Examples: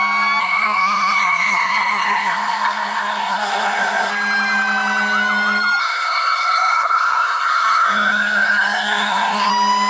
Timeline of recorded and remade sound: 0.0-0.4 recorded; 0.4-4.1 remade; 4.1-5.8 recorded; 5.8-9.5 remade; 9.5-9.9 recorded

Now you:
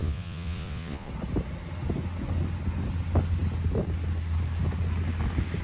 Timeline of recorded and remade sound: 0.0-1.1 remade; 1.1-5.6 recorded

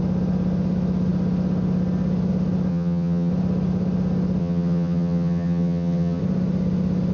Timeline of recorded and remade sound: 0.0-2.7 recorded; 2.7-3.3 remade; 3.3-4.4 recorded; 4.4-6.2 remade; 6.2-7.1 recorded

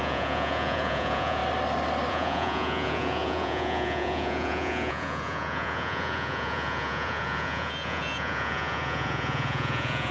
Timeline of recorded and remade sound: 0.0-1.4 remade; 1.4-2.1 recorded; 2.1-10.1 remade